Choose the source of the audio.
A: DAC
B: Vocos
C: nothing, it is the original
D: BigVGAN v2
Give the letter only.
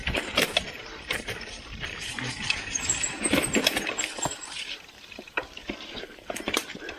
D